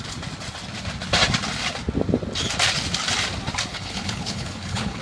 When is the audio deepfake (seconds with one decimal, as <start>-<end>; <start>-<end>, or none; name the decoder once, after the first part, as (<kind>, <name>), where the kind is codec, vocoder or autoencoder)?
3.7-5.0 (codec, HILCodec)